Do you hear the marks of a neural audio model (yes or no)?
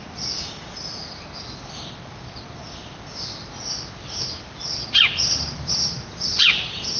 no